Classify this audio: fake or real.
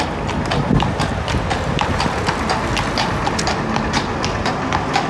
real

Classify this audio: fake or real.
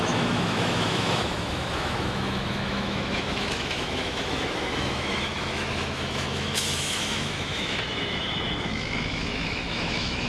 fake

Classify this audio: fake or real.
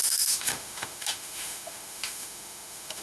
fake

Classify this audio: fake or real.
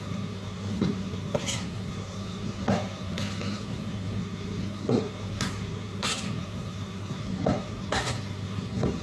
fake